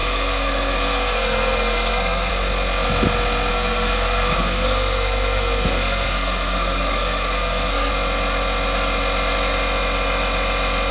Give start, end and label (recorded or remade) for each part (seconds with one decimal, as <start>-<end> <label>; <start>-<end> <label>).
0.0-2.3 remade; 2.3-3.5 recorded; 3.5-7.9 remade; 7.9-10.9 recorded